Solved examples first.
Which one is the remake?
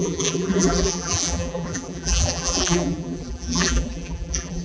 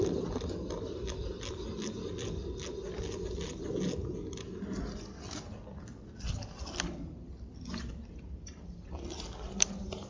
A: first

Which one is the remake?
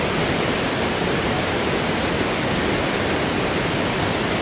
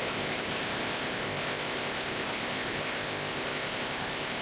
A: second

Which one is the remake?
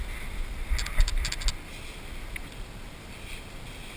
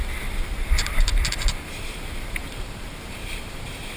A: second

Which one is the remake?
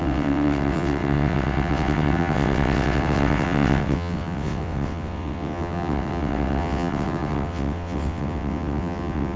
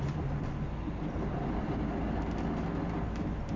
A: first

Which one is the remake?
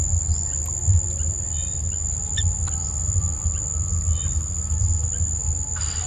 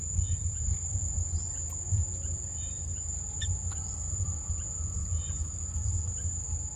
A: second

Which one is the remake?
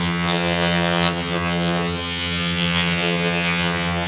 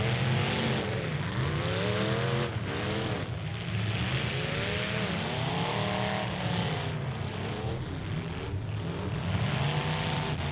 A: first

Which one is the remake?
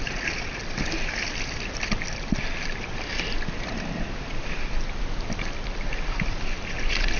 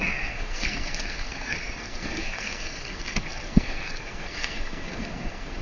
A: second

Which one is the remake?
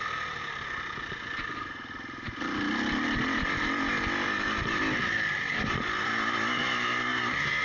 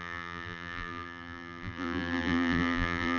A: second